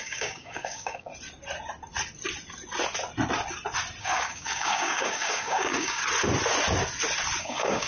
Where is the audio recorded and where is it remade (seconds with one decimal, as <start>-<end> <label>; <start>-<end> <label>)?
0.0-1.1 remade; 1.1-4.0 recorded; 4.0-6.0 remade; 6.0-7.4 recorded; 7.4-7.9 remade